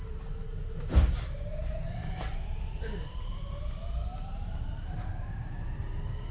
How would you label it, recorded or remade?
remade